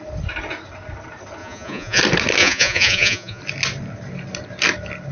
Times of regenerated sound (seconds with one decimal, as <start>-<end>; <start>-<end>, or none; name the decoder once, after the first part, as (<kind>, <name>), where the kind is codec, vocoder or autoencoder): 1.4-2.0 (vocoder, Vocos); 2.4-3.4